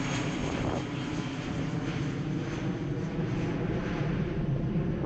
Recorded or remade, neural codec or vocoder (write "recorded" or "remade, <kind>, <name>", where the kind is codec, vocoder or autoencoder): recorded